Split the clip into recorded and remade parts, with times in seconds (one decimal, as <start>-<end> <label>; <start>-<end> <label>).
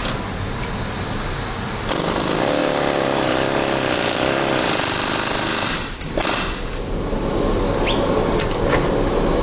0.0-9.4 recorded